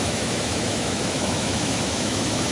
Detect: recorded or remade remade